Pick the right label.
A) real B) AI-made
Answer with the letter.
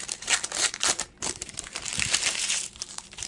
B